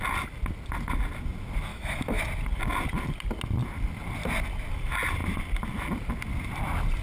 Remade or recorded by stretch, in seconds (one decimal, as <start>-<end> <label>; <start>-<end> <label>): 0.0-1.7 recorded; 1.7-2.2 remade; 2.2-7.0 recorded